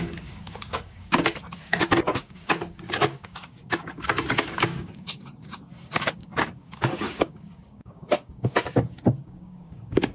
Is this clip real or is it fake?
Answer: fake